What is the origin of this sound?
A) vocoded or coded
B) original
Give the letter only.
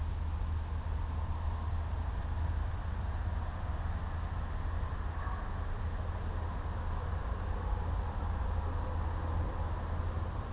B